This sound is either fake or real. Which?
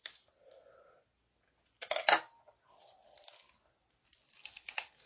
real